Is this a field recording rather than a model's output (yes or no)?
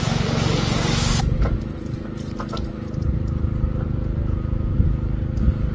yes